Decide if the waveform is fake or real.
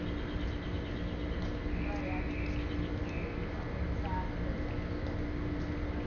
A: real